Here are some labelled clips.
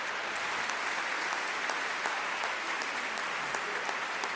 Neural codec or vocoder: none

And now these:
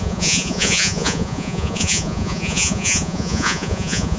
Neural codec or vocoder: vocoder, Vocos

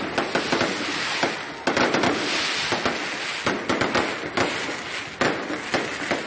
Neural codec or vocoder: none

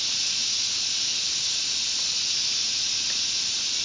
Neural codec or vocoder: none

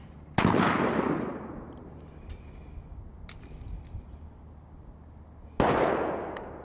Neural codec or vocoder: none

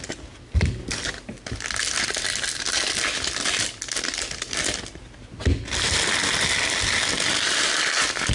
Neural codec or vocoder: none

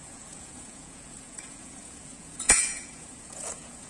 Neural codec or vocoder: vocoder, Vocos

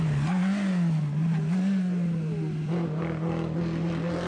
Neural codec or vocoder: none